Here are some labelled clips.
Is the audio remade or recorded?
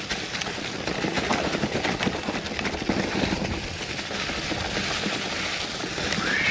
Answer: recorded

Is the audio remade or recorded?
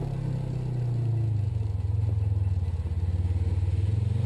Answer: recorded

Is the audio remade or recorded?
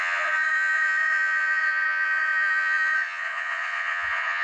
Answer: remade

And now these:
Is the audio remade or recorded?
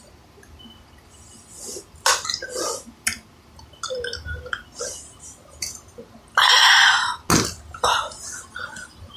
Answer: recorded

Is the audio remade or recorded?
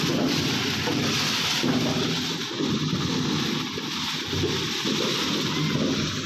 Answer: recorded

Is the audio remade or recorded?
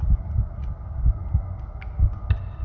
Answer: recorded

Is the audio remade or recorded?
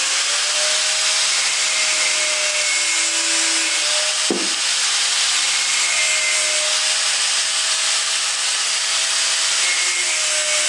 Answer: recorded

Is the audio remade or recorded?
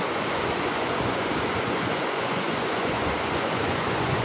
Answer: remade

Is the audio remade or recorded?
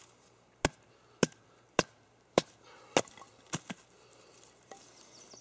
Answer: recorded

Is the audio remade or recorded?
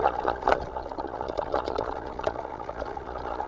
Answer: remade